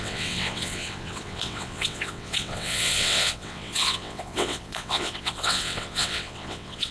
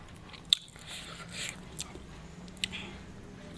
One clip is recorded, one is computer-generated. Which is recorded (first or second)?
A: second